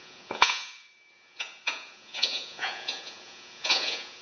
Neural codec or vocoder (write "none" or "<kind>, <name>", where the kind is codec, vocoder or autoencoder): vocoder, Vocos